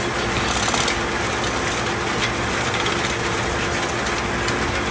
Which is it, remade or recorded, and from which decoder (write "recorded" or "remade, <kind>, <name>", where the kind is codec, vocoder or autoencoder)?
recorded